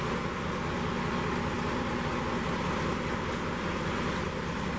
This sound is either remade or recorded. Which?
recorded